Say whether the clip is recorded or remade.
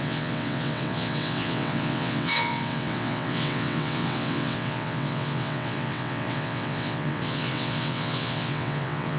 remade